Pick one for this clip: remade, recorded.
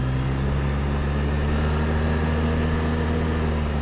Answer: recorded